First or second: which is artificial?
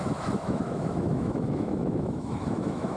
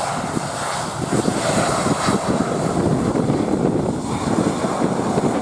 first